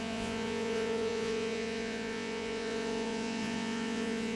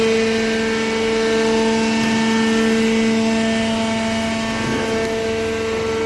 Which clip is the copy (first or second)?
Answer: first